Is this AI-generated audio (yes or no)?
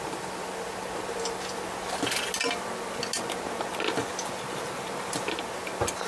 no